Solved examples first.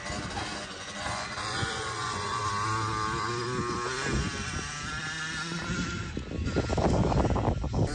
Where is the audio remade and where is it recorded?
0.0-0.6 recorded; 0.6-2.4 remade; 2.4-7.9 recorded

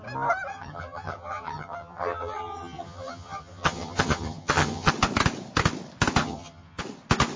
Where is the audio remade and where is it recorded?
0.0-0.5 recorded; 0.5-4.9 remade; 4.9-6.2 recorded; 6.2-6.8 remade; 6.8-7.4 recorded

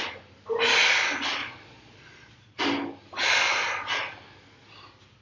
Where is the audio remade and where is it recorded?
0.0-1.4 recorded; 1.4-2.6 remade; 2.6-5.2 recorded

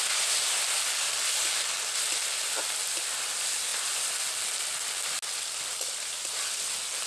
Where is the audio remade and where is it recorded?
0.0-7.1 recorded